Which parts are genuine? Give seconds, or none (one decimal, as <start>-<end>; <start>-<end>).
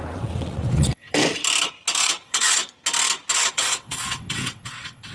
1.2-2.0; 2.6-3.5